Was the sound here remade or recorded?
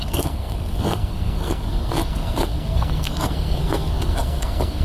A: remade